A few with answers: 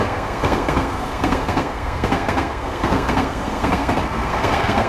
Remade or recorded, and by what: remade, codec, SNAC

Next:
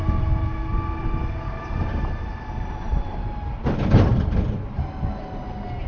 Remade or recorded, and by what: recorded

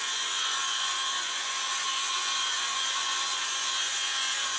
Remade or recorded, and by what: remade, vocoder, Vocos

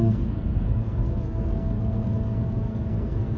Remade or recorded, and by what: remade, codec, SNAC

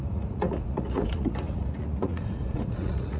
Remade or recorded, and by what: remade, vocoder, Vocos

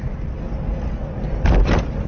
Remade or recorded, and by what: recorded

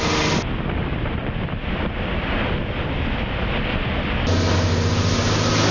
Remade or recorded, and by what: recorded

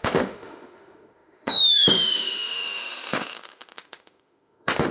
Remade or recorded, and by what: remade, autoencoder, DAC-VAE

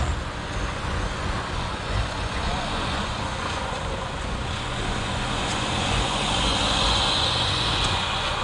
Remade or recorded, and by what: remade, vocoder, Vocos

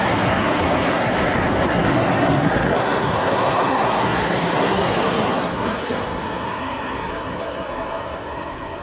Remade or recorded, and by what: remade, codec, SNAC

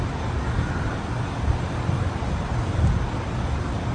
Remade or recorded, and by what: recorded